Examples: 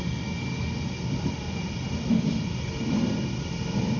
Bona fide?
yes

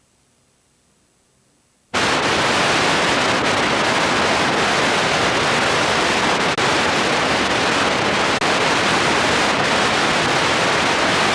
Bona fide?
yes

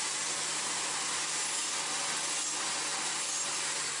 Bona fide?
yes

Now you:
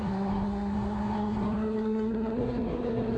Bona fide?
no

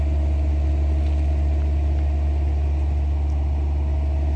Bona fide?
yes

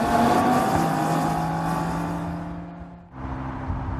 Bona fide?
yes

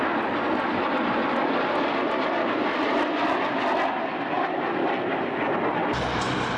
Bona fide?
yes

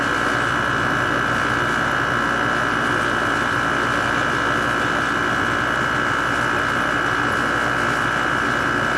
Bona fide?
yes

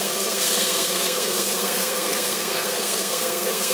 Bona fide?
no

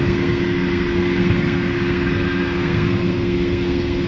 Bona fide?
no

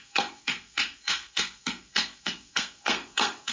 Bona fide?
no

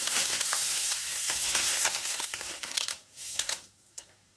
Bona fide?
no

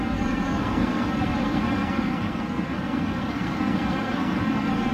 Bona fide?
no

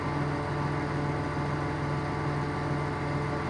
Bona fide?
yes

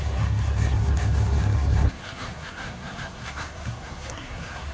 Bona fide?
no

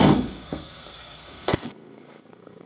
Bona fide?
no